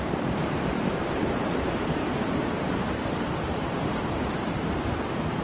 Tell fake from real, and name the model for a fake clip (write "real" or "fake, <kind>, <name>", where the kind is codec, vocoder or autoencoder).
fake, vocoder, BigVGAN v2